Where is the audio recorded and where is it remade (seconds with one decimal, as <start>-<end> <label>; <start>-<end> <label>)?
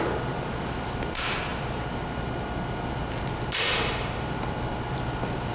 0.0-5.5 recorded